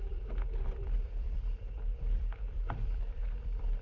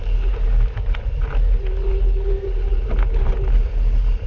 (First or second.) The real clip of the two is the second